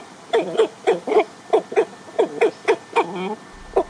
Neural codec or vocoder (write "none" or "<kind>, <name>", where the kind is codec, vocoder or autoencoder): none